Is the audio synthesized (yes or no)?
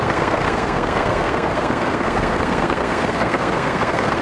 yes